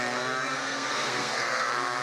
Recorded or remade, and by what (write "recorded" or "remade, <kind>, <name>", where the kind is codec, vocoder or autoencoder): remade, codec, SNAC